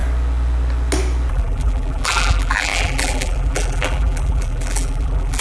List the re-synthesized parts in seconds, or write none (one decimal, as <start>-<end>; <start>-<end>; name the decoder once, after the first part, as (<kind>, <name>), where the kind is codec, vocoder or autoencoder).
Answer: 1.3-5.4 (vocoder, BigVGAN v2)